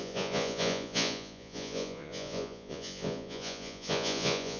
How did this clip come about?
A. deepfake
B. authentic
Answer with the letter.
A